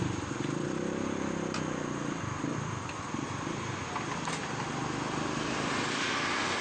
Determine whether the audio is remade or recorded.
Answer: recorded